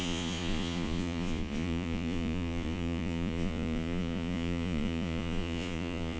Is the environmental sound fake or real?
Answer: fake